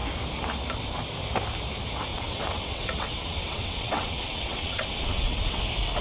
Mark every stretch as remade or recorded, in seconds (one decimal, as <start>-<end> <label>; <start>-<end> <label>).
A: 0.0-2.1 recorded; 2.1-5.6 remade; 5.6-6.0 recorded